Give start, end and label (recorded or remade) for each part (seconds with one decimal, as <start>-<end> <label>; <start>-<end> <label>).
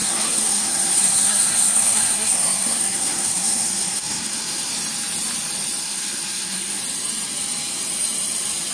0.0-4.7 remade; 4.7-5.8 recorded; 5.8-6.8 remade; 6.8-8.7 recorded